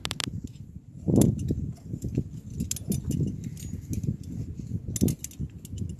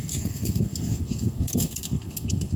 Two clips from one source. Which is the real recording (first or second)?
first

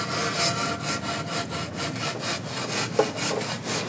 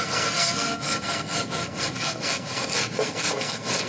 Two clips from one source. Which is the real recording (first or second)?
first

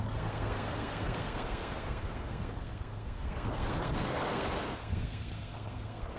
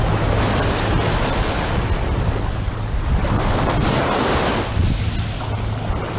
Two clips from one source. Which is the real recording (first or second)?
second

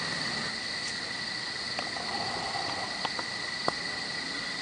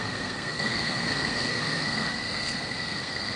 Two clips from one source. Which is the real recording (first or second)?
first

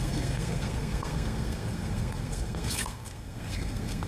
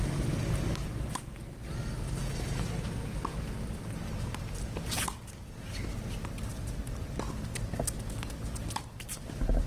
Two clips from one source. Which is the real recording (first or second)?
second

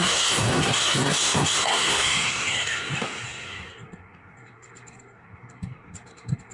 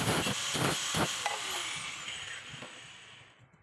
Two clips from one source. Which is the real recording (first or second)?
second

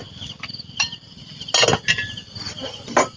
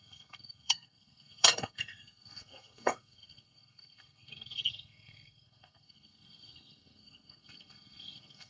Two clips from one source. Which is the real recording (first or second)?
first